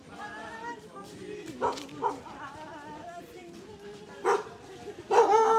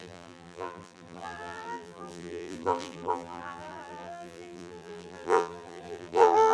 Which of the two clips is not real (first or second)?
second